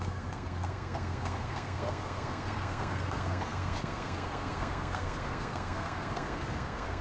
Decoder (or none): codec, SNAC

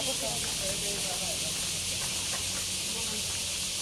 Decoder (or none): none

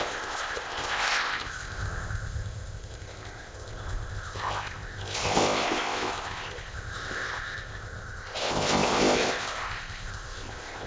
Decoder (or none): codec, ZipCodec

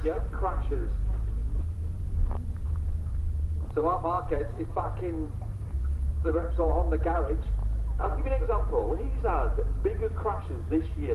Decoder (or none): vocoder, BigVGAN v2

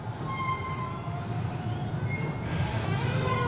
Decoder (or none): none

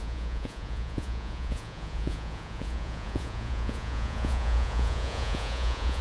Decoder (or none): vocoder, Vocos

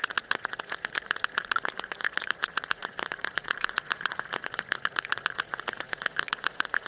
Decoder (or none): vocoder, Vocos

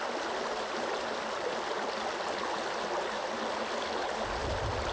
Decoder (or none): none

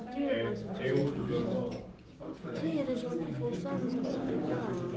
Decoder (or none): codec, DAC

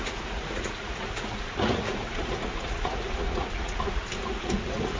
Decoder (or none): vocoder, Vocos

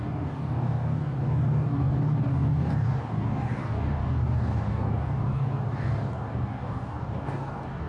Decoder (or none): codec, DAC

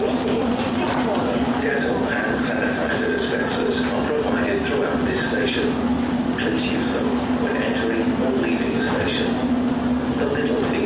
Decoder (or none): none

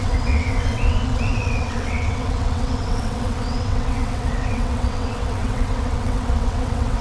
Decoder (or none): vocoder, WaveNeXt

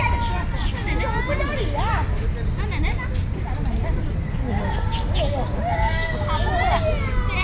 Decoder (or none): none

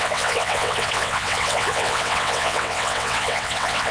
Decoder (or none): vocoder, WaveNeXt